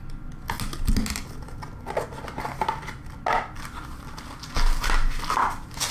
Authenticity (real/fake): real